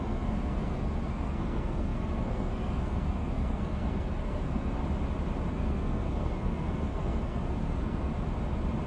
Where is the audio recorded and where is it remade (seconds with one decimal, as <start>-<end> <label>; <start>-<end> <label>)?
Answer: 0.0-4.8 remade; 4.8-5.5 recorded; 5.5-8.1 remade; 8.1-8.9 recorded